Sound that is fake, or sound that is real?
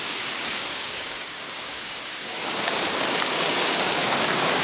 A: fake